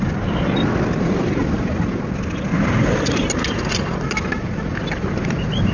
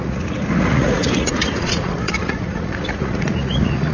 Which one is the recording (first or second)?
first